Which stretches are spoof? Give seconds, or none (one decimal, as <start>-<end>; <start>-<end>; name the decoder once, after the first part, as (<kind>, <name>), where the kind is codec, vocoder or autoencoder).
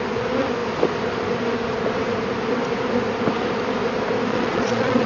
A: 4.3-5.1 (vocoder, Vocos)